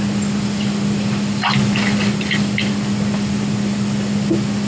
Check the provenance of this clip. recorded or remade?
recorded